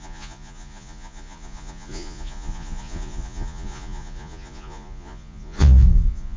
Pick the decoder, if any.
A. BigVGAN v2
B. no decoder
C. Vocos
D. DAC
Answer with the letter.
C